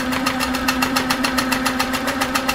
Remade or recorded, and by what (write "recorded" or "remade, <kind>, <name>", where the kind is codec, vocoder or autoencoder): remade, vocoder, BigVGAN v2